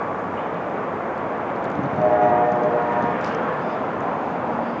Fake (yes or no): no